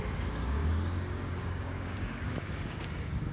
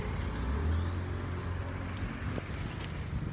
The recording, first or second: second